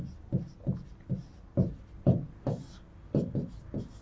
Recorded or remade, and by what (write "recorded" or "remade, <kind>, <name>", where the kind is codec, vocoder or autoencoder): recorded